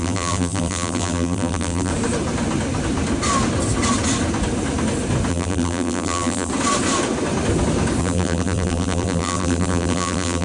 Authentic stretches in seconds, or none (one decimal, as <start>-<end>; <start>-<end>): 1.9-5.3; 6.5-8.0